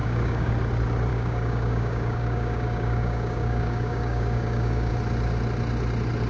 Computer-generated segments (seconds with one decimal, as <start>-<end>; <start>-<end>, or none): 0.0-0.5; 1.1-4.9